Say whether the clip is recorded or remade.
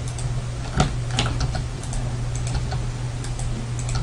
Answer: recorded